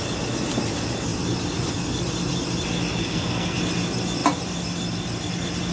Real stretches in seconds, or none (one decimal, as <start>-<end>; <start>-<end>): 0.0-3.0; 3.6-5.7